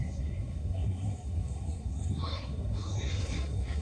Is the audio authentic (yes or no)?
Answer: no